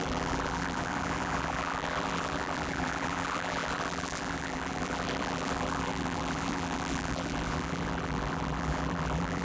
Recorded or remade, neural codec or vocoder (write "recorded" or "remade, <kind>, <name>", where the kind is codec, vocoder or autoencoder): remade, vocoder, BigVGAN v2